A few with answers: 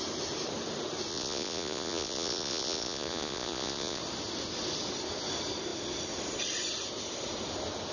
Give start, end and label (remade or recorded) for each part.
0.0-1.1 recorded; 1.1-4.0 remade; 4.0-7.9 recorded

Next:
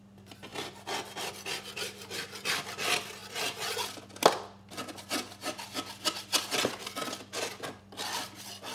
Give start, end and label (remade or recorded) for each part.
0.0-8.7 recorded